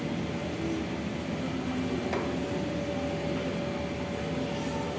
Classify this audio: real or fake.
real